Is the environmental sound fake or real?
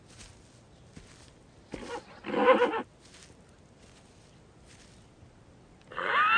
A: real